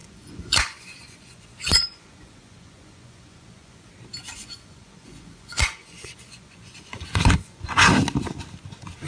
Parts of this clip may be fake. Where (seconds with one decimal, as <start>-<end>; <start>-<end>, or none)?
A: 0.0-3.9; 4.3-7.9